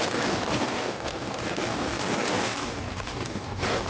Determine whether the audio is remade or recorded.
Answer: remade